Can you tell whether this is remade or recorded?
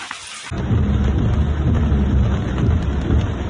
recorded